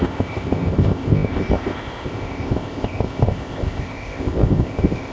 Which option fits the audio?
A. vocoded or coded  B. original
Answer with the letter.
A